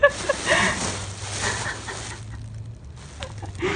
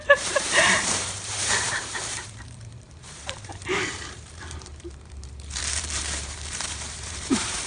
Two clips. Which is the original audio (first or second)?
first